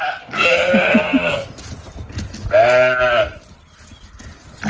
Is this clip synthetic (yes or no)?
no